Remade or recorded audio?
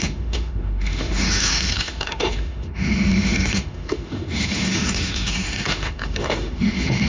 remade